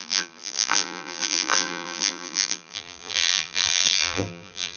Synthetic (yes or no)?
yes